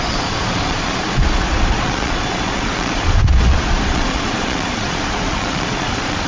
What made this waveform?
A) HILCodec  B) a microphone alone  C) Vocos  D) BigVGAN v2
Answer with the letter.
C